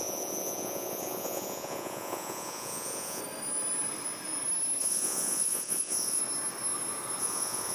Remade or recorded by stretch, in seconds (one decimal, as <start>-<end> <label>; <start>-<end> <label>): 0.0-3.2 remade; 3.2-4.8 recorded; 4.8-6.2 remade; 6.2-7.2 recorded; 7.2-7.7 remade